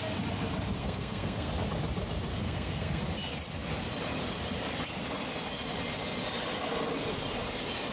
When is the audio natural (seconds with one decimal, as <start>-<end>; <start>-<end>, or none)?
0.0-0.8; 1.5-2.3; 3.0-7.9